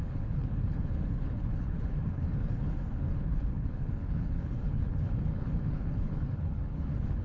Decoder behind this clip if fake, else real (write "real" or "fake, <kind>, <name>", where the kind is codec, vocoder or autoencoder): fake, codec, HILCodec